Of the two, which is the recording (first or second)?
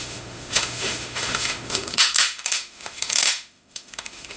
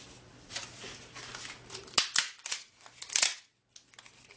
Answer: second